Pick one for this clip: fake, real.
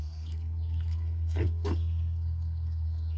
fake